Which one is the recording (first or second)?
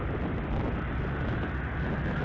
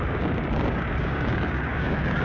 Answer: first